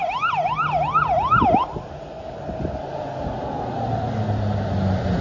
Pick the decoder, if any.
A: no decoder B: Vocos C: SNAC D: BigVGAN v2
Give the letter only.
A